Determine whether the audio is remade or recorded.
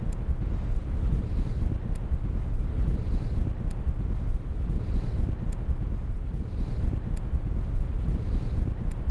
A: recorded